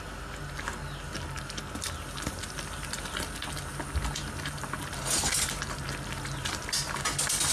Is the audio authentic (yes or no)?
yes